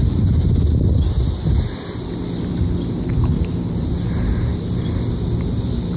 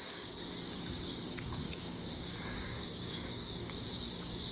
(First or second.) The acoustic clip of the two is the first